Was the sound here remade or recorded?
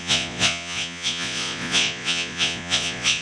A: remade